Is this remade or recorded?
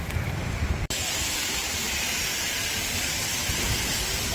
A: remade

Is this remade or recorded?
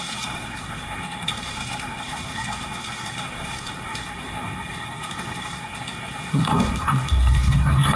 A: remade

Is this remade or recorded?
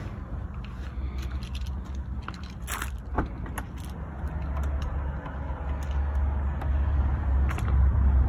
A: recorded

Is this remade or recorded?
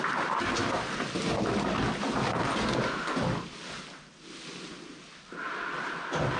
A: recorded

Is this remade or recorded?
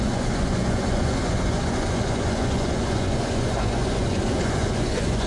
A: remade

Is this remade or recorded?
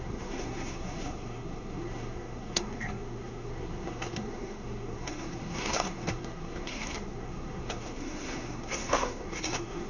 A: remade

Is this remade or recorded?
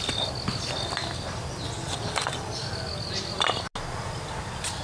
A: recorded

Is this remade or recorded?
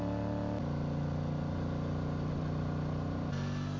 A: recorded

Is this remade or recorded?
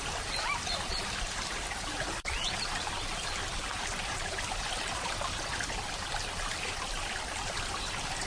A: remade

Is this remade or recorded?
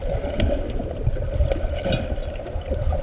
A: recorded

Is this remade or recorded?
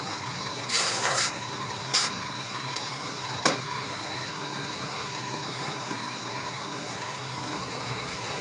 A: remade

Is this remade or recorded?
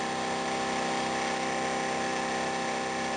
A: recorded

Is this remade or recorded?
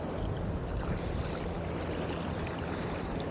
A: recorded